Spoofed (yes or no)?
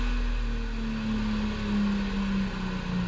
no